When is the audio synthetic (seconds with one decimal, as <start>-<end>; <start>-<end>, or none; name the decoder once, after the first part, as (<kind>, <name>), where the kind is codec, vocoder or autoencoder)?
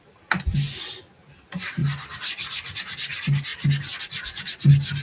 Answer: none